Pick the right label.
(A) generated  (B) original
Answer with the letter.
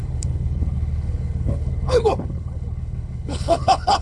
A